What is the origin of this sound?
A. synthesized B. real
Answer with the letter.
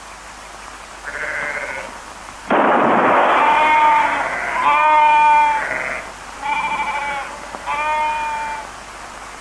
B